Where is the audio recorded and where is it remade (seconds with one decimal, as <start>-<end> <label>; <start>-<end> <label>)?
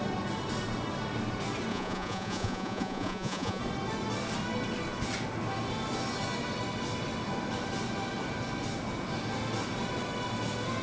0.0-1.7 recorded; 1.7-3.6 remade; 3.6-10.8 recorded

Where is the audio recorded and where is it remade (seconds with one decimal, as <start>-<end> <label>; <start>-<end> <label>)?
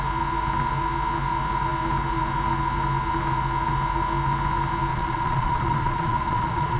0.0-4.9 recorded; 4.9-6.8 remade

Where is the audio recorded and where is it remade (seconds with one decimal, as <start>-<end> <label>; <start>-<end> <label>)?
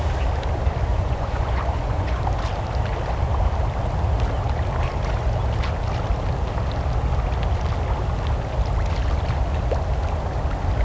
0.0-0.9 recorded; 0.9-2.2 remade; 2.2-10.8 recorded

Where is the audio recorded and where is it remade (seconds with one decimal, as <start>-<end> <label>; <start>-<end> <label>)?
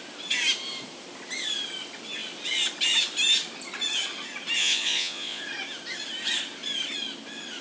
0.0-4.6 recorded; 4.6-5.4 remade; 5.4-7.6 recorded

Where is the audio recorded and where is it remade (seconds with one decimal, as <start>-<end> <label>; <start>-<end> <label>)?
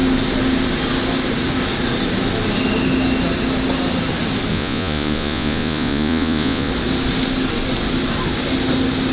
0.0-4.5 recorded; 4.5-6.7 remade; 6.7-9.1 recorded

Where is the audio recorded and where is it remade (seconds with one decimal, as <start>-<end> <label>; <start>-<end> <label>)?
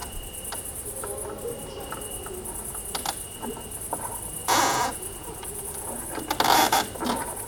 0.0-4.4 recorded; 4.4-6.1 remade; 6.1-7.5 recorded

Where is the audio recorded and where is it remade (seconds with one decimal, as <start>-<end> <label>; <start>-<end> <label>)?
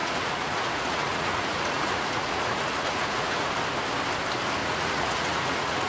0.0-3.5 remade; 3.5-4.6 recorded; 4.6-5.9 remade